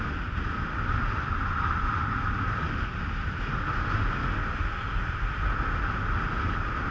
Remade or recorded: recorded